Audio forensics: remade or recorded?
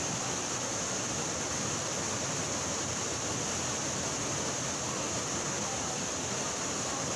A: recorded